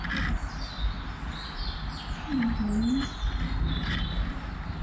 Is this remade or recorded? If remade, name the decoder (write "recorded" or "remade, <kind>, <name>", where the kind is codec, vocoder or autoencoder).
recorded